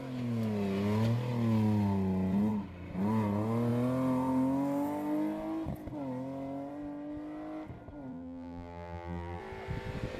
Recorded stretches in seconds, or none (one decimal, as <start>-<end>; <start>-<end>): 0.0-8.1; 9.4-10.2

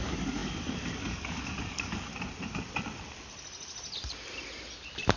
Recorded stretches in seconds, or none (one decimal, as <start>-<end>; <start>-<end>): 2.1-5.2

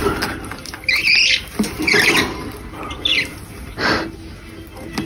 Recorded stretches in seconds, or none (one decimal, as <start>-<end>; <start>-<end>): 0.0-5.1

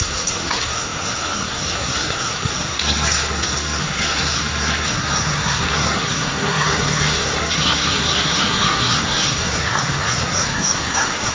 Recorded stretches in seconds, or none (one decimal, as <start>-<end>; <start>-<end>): none